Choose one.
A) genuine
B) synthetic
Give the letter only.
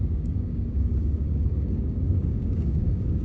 B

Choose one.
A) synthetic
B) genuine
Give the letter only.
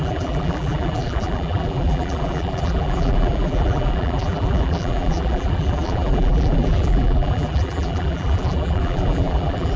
A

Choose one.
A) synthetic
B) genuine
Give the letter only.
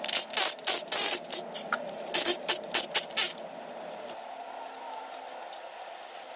B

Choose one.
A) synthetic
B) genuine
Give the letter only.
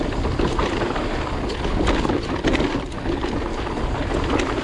B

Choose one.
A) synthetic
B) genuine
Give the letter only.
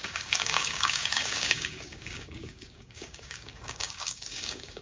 A